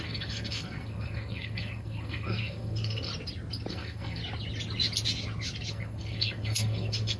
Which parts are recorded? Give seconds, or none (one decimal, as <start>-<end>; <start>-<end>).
3.1-3.7; 4.2-5.7